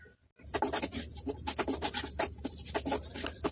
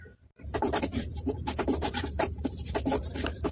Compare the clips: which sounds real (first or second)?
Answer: first